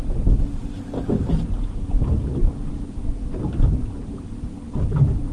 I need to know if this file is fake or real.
real